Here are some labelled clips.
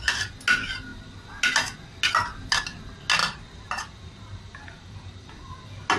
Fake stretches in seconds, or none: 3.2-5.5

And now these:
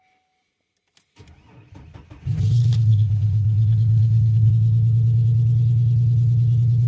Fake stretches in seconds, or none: 2.6-4.5

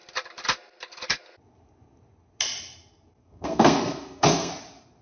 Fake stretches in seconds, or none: 3.2-4.5